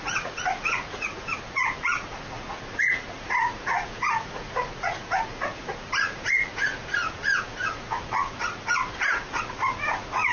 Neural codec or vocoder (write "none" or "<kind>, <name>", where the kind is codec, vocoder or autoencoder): vocoder, Vocos